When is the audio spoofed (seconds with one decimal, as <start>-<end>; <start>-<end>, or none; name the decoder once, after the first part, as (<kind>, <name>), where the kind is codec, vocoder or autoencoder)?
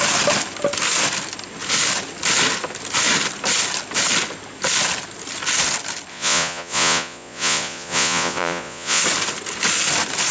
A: 6.1-9.0 (vocoder, Vocos)